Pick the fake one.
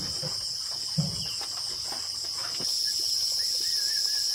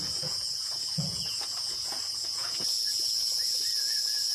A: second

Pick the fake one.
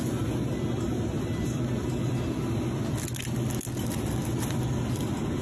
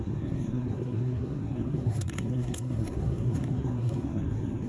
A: second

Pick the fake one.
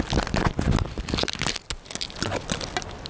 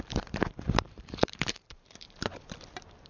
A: second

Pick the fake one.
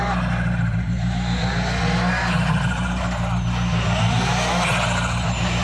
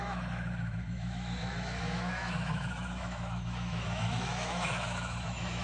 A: second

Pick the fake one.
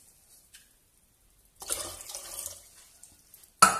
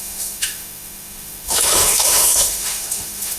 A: second